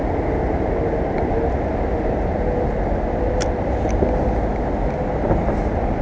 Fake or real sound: real